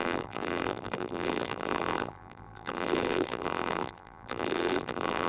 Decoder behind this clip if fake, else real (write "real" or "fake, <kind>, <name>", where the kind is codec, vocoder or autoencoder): fake, vocoder, BigVGAN v2